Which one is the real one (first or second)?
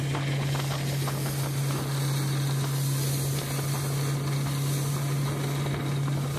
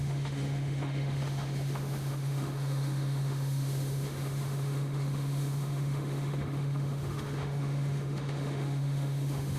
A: first